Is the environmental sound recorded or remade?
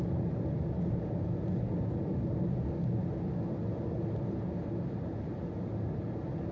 recorded